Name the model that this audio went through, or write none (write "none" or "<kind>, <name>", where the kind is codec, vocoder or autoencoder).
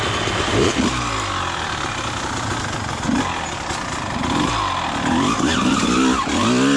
none